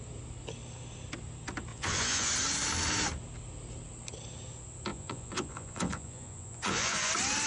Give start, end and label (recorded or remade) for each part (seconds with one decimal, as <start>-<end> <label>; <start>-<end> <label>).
0.0-1.7 recorded; 1.7-2.3 remade; 2.3-4.9 recorded; 4.9-7.1 remade; 7.1-7.5 recorded